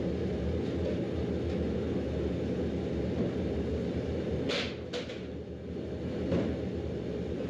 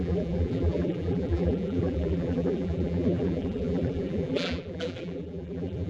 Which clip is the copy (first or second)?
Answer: second